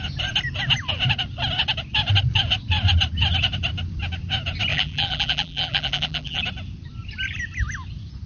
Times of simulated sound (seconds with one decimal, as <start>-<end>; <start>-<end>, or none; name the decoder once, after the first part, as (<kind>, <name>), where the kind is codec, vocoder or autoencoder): 4.7-6.4 (vocoder, BigVGAN v2)